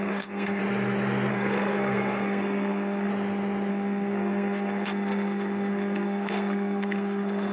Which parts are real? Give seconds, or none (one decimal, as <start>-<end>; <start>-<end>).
0.6-1.3; 3.1-3.7